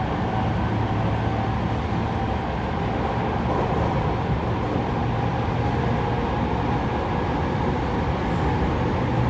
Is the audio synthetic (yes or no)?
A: no